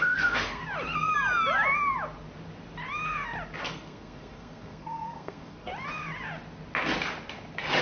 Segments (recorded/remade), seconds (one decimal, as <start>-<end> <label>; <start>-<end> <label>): 0.0-0.6 remade; 0.6-3.6 recorded; 3.6-5.7 remade; 5.7-7.8 recorded